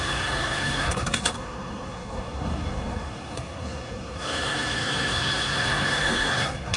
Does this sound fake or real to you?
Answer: fake